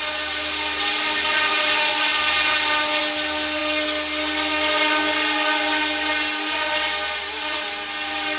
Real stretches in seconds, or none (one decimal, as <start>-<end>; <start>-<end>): 0.0-8.4